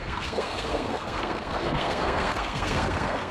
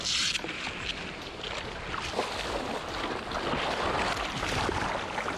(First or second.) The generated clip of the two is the first